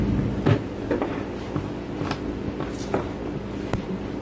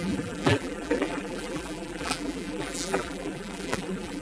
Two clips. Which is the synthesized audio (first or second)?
second